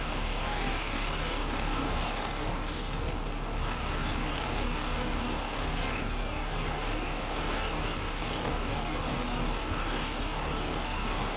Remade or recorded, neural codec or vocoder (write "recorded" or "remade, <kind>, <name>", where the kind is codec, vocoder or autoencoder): remade, codec, DAC